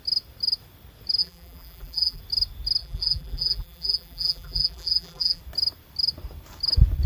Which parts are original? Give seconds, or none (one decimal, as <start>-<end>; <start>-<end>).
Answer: 0.0-1.2; 2.2-2.8; 5.4-7.1